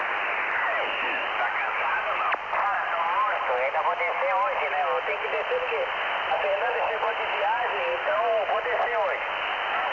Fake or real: real